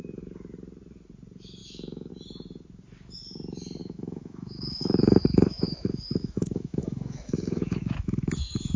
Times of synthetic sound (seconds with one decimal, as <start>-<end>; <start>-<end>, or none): 1.6-2.1; 3.8-8.8